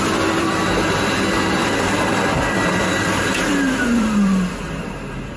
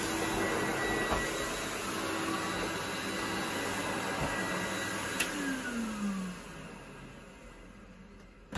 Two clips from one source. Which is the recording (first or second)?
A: second